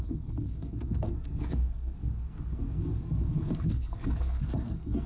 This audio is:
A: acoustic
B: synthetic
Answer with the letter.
B